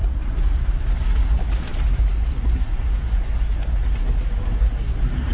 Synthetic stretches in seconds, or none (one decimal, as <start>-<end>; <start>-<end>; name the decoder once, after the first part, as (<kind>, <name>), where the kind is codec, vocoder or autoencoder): none